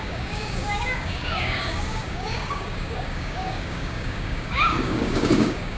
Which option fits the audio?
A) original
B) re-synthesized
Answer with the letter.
B